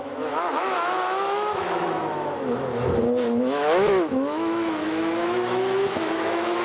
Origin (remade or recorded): remade